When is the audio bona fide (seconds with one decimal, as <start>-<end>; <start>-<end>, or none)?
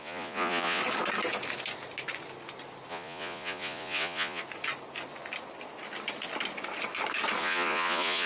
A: 0.8-2.9; 4.4-7.4